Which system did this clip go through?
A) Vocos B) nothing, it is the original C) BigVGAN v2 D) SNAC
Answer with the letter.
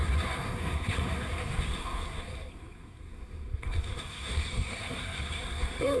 D